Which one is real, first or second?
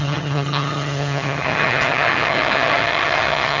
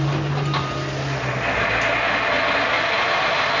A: second